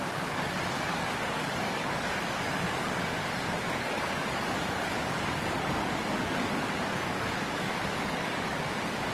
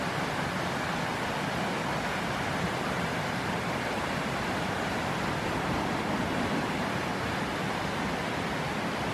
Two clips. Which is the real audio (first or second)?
second